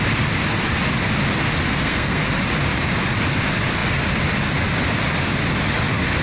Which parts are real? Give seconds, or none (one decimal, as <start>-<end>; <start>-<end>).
0.0-1.6; 2.2-6.2